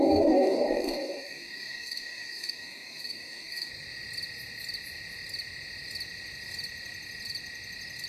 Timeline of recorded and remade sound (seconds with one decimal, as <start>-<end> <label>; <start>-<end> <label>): 0.0-3.7 remade; 3.7-8.1 recorded